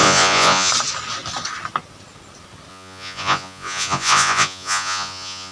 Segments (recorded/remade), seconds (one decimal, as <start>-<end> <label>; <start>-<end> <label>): 0.0-0.7 remade; 0.7-2.7 recorded; 2.7-5.5 remade